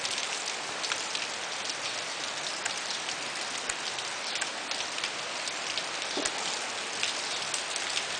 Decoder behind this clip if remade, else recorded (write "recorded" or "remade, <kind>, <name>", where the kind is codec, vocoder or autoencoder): recorded